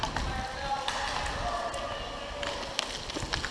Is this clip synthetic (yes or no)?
no